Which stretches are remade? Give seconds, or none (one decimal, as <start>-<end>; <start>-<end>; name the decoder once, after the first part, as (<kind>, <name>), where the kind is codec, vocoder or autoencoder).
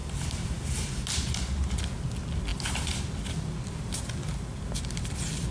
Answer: 0.0-1.7 (vocoder, BigVGAN v2)